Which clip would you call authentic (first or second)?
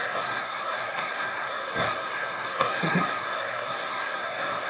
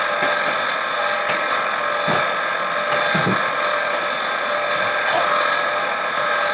second